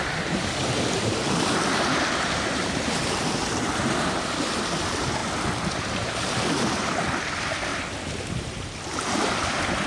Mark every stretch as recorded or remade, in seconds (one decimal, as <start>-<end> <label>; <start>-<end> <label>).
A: 0.0-5.2 remade; 5.2-5.7 recorded; 5.7-7.7 remade; 7.7-8.4 recorded; 8.4-9.9 remade